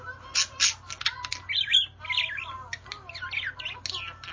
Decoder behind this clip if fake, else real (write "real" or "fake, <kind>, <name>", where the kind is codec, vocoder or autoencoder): real